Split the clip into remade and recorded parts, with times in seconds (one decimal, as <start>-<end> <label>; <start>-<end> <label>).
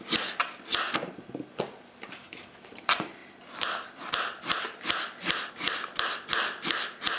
0.0-2.2 recorded; 2.2-2.7 remade; 2.7-7.2 recorded